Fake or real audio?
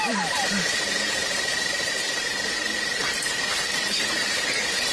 fake